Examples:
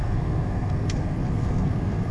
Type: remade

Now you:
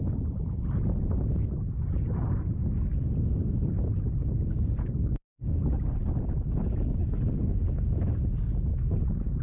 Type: recorded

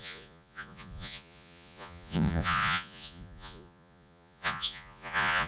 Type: remade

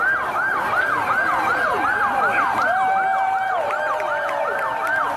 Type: recorded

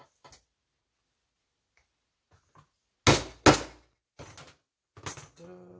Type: recorded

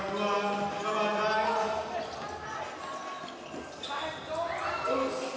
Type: recorded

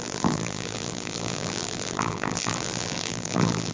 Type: remade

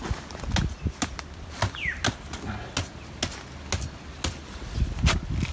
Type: recorded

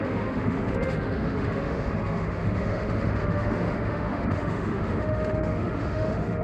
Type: remade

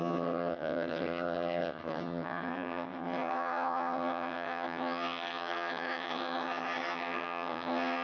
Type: remade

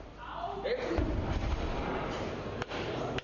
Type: remade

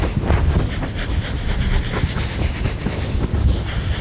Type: recorded